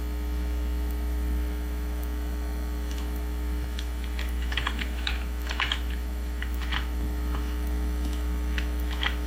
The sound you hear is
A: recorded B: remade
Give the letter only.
B